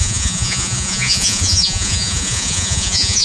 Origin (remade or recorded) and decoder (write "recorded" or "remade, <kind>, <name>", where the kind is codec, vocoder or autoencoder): remade, vocoder, Vocos